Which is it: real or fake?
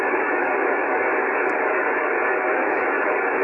fake